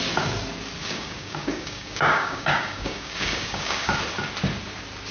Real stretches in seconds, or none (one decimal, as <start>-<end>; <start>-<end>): 0.0-0.8; 3.9-5.1